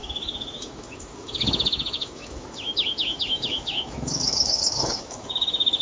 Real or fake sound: fake